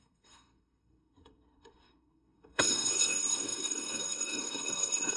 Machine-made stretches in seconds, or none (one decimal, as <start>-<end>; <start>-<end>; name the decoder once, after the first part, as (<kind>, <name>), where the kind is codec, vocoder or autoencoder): 0.0-5.2 (codec, SNAC)